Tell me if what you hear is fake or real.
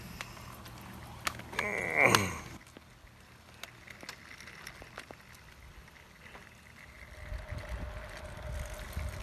real